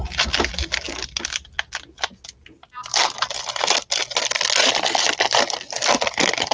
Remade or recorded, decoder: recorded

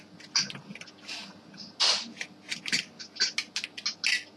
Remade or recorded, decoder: recorded